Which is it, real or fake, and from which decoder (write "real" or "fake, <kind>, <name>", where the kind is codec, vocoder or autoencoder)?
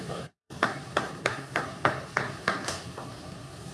fake, codec, SNAC